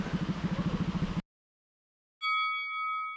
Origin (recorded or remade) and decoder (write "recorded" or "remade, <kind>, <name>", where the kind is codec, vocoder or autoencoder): recorded